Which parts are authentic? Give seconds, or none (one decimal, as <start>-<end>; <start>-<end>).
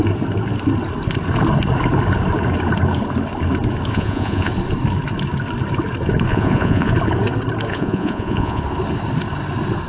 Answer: 0.0-3.9; 4.5-6.3; 6.9-7.7; 8.6-9.9